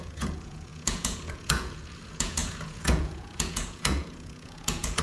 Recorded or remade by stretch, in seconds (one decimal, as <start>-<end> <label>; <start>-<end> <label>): 0.0-5.0 remade